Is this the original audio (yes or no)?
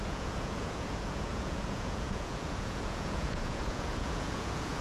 no